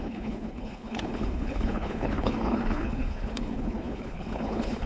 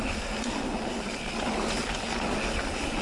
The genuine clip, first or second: second